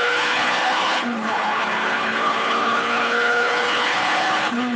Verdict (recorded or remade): remade